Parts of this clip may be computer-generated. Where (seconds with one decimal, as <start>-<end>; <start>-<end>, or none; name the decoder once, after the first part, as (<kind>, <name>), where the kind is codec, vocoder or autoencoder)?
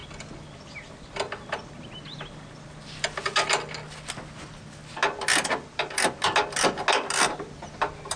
none